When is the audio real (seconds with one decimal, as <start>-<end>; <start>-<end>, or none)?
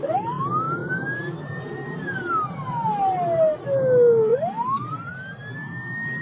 0.0-6.2